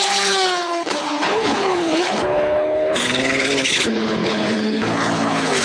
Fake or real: fake